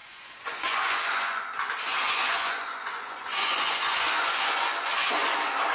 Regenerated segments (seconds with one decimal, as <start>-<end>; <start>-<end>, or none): 0.0-1.4; 1.9-5.3